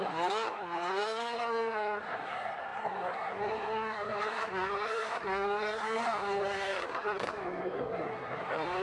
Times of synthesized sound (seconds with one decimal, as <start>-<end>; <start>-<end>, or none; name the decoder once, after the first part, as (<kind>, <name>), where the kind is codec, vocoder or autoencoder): 0.0-8.8 (codec, SNAC)